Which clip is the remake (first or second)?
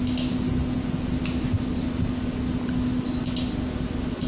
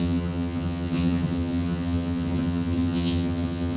second